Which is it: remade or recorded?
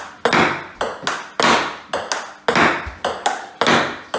recorded